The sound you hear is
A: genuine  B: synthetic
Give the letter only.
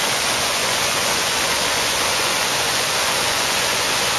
B